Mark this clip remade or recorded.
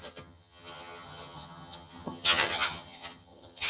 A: remade